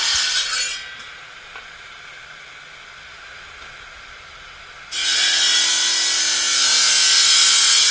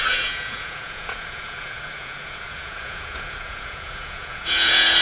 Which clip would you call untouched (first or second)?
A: first